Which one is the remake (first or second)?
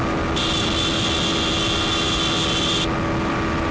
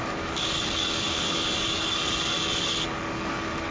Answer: second